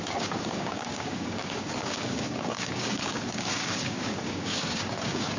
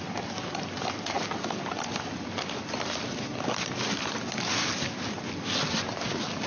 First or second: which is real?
second